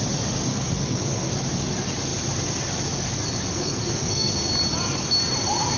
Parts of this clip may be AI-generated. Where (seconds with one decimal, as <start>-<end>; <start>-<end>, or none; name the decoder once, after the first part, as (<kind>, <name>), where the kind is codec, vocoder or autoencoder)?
0.5-1.3 (codec, SNAC); 3.5-4.3